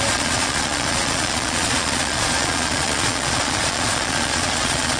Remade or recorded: remade